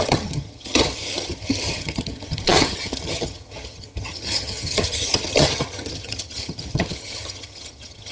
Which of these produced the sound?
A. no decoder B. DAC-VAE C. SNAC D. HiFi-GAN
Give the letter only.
D